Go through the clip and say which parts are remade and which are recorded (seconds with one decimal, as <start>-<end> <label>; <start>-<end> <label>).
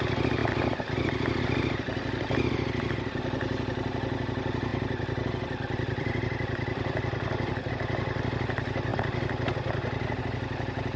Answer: 0.0-0.4 recorded; 0.4-1.4 remade; 1.4-4.7 recorded; 4.7-7.7 remade; 7.7-11.0 recorded